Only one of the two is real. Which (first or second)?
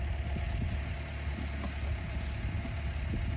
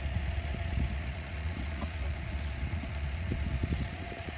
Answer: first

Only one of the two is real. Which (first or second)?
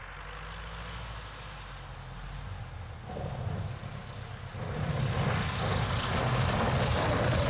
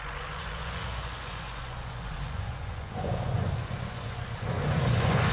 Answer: first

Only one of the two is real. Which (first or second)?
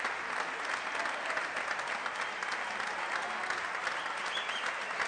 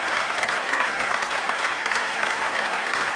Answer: first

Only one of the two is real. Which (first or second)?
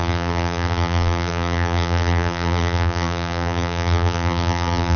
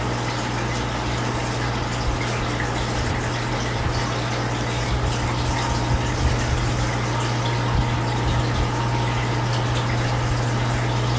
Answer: second